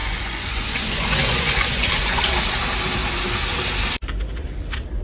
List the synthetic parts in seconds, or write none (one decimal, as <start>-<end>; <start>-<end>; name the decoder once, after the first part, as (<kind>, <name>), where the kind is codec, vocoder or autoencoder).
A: 0.0-2.2 (vocoder, Vocos)